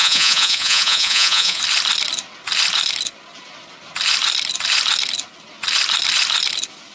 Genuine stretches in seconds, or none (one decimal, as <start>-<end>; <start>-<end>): 1.6-6.9